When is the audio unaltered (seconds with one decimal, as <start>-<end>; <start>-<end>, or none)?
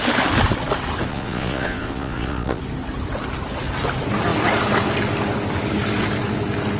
0.0-1.1; 2.6-6.8